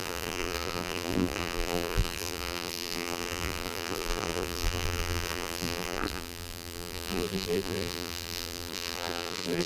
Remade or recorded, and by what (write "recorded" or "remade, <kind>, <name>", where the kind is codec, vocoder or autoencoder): remade, vocoder, BigVGAN v2